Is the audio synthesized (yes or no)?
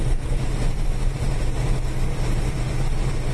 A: no